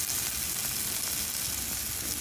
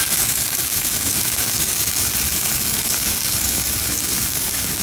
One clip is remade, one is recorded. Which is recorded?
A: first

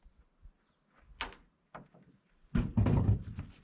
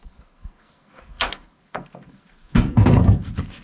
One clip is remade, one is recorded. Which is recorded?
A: first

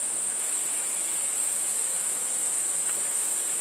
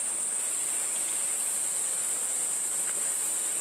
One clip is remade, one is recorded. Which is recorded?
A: second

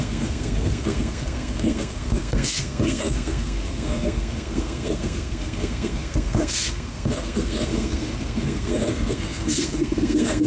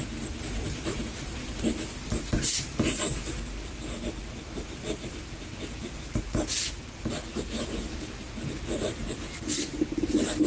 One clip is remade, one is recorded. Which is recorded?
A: second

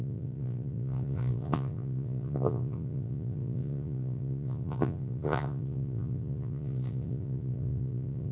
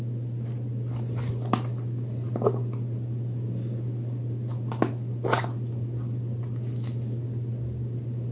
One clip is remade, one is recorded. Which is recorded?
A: second